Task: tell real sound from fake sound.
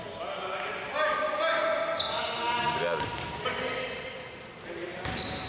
real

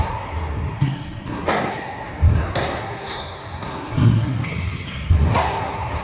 fake